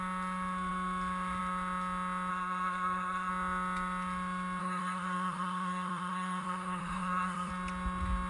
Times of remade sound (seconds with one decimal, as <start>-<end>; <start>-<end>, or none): 2.3-3.3; 4.6-7.5